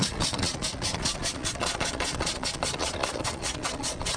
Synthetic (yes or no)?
yes